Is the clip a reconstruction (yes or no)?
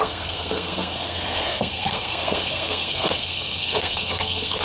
yes